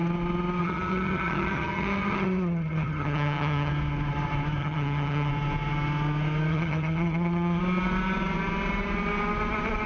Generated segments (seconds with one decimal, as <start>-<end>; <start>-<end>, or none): 0.6-3.7; 4.6-5.3; 6.5-7.6